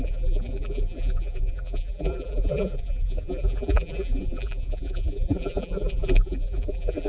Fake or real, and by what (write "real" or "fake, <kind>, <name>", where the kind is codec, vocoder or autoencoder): fake, vocoder, BigVGAN v2